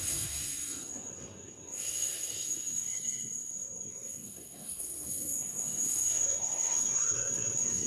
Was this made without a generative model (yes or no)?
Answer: no